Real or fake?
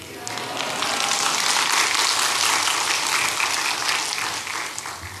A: real